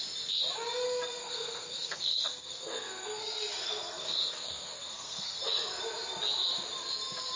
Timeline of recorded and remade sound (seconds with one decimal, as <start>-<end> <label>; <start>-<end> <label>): 0.0-1.2 recorded; 1.2-5.4 remade; 5.4-7.4 recorded